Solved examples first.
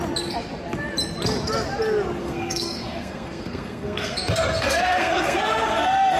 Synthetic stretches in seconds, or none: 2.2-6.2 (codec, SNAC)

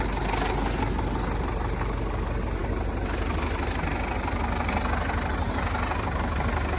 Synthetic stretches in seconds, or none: none

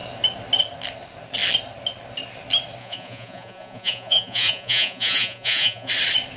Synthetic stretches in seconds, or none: 2.8-5.9 (vocoder, Vocos)

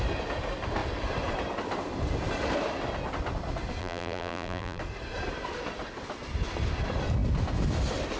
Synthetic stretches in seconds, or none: 3.8-4.8 (vocoder, BigVGAN v2)

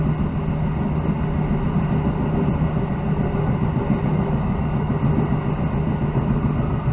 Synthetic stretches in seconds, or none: 4.1-4.9 (codec, DAC)

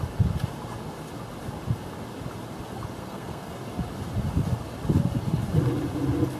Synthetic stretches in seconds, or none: 3.0-3.6 (codec, SNAC)